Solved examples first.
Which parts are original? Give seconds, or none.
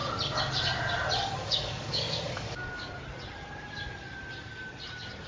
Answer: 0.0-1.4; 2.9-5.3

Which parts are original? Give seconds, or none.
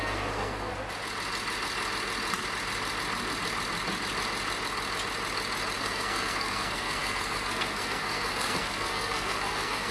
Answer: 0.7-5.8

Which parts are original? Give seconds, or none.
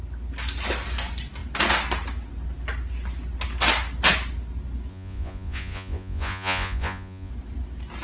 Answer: 0.0-4.9; 7.3-8.0